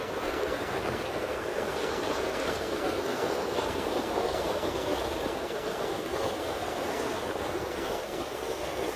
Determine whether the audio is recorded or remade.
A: remade